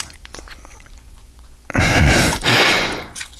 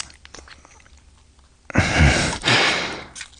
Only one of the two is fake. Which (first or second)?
first